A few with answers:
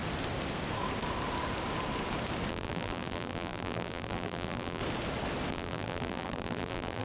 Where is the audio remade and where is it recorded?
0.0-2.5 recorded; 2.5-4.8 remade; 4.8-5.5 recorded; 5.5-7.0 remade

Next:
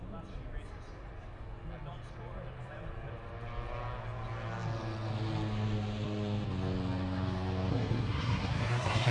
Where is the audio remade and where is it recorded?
0.0-7.7 recorded; 7.7-9.1 remade

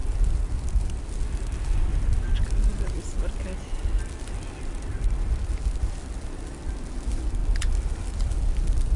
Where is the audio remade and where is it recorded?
0.0-0.6 remade; 0.6-7.4 recorded; 7.4-8.5 remade; 8.5-9.0 recorded

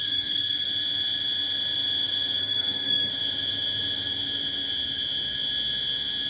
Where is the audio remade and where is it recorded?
0.0-0.7 remade; 0.7-2.4 recorded; 2.4-3.1 remade; 3.1-6.3 recorded